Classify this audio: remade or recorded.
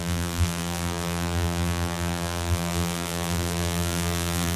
remade